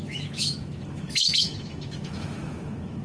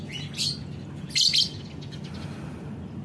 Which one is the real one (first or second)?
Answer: second